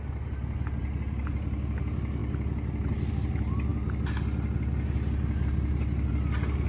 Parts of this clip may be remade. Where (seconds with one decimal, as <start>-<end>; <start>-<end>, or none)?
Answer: none